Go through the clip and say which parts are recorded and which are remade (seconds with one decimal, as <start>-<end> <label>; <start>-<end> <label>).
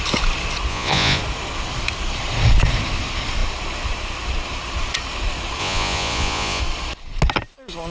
0.0-0.7 recorded; 0.7-1.2 remade; 1.2-5.6 recorded; 5.6-6.6 remade; 6.6-7.9 recorded